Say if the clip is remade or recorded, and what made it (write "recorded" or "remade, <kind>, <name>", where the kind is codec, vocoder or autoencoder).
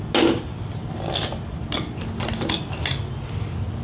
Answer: recorded